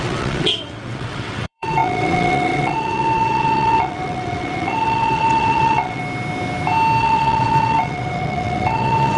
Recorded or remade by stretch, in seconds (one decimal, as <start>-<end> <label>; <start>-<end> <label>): 0.0-6.0 remade; 6.0-7.0 recorded; 7.0-9.2 remade